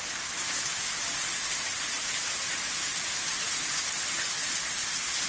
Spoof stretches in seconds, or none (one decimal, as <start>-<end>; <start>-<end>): none

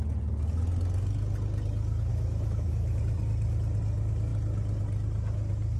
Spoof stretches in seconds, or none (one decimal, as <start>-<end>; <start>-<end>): 2.1-3.0

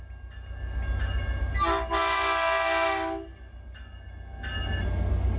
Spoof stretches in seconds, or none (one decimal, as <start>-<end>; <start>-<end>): none

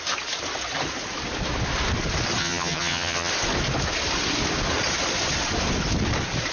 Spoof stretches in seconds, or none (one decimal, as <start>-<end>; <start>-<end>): 2.4-3.3

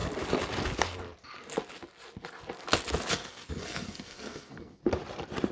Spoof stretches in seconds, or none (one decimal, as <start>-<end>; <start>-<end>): 3.1-4.8

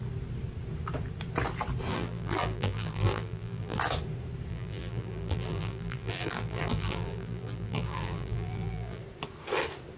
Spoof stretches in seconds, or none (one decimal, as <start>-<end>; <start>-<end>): 1.9-3.8; 4.5-9.0

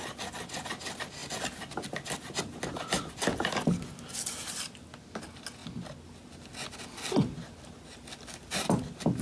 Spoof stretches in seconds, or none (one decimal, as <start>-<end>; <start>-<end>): none